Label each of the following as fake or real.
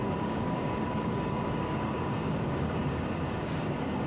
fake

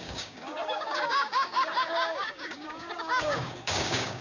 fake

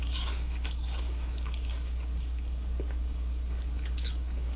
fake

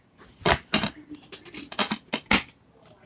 real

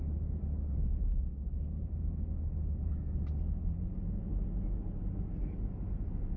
real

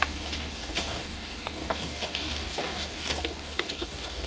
fake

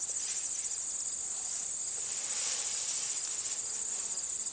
real